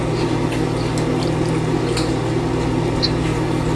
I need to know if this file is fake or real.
real